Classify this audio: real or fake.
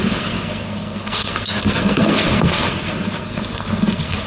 fake